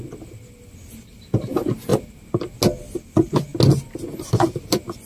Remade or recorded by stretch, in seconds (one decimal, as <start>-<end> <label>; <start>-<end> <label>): 0.0-5.1 recorded